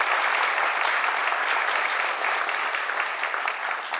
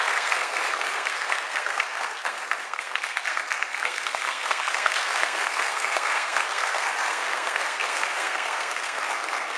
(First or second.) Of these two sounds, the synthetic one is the second